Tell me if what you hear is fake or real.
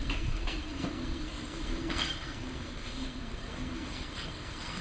fake